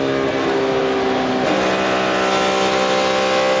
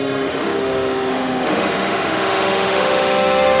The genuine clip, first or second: first